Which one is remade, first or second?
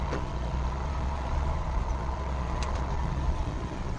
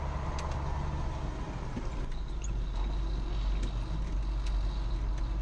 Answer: first